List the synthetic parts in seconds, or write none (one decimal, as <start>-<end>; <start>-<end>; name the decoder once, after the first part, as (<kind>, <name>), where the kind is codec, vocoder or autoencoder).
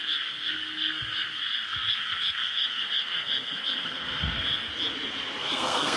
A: 0.0-4.7 (codec, SNAC); 5.4-6.0